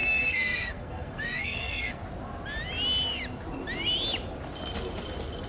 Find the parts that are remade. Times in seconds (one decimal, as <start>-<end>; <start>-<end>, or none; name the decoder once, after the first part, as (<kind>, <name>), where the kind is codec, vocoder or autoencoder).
0.0-2.0 (codec, SNAC)